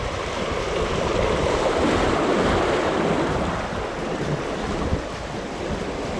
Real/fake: fake